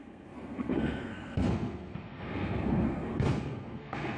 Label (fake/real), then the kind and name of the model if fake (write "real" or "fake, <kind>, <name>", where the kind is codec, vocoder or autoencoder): fake, codec, SNAC